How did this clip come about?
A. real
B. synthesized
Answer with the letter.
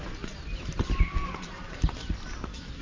A